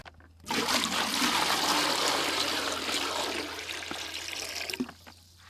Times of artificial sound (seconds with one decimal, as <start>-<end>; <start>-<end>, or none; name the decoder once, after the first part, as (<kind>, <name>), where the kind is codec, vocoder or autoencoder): none